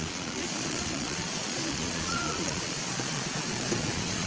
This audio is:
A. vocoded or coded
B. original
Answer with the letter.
A